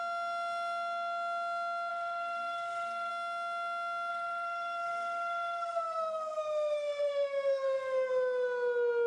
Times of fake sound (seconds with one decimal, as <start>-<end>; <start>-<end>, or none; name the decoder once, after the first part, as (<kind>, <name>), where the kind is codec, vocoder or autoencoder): 1.9-3.1 (codec, SNAC); 4.1-8.1